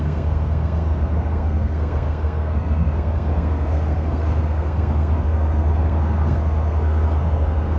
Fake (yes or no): yes